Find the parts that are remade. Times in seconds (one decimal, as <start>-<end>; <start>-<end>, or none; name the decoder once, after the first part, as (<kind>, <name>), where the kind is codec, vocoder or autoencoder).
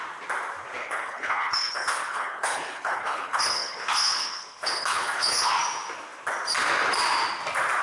0.8-5.5 (codec, HILCodec)